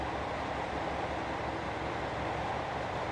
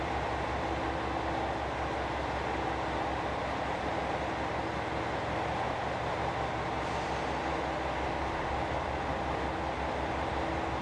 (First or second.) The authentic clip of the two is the second